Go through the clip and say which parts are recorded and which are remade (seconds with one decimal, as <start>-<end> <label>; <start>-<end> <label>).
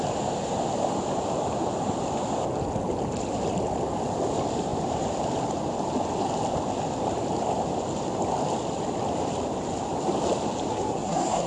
0.0-10.7 recorded; 10.7-11.5 remade